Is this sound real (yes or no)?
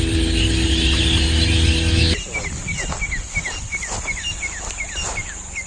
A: yes